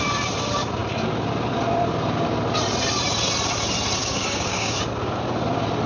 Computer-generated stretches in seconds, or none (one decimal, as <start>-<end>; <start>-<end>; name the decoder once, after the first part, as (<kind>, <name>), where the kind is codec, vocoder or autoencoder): 4.0-4.8 (codec, DAC)